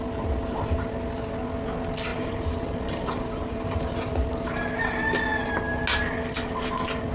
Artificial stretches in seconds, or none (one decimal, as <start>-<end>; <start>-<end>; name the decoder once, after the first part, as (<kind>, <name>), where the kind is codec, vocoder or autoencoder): 2.1-4.3 (vocoder, BigVGAN v2)